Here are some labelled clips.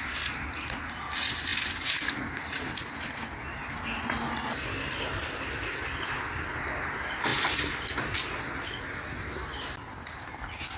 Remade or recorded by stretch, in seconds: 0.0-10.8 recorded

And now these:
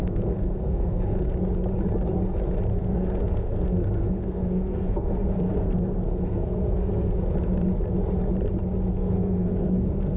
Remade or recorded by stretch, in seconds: 0.0-1.4 remade; 1.4-2.7 recorded; 2.7-7.1 remade; 7.1-8.9 recorded; 8.9-10.2 remade

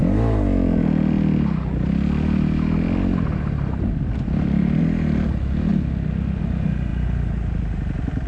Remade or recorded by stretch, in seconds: 0.0-8.3 recorded